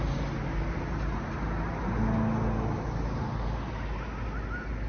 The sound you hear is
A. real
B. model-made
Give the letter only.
A